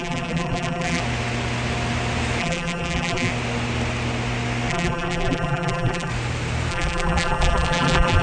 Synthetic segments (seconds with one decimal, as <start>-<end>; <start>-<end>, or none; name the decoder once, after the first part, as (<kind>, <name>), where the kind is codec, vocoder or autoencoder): 0.0-1.0 (vocoder, BigVGAN v2); 2.4-3.3; 4.7-6.1; 6.7-8.2